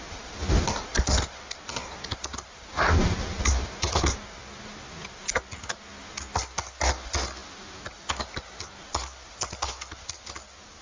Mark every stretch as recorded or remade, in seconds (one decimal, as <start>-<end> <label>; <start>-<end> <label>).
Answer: 0.0-10.8 recorded